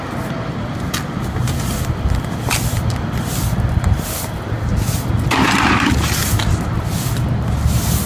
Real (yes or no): yes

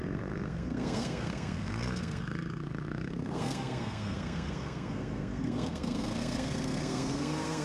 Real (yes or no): no